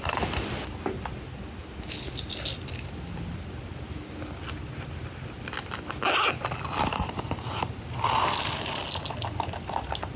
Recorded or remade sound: recorded